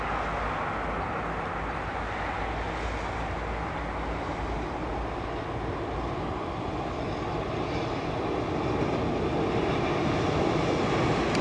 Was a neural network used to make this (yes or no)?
no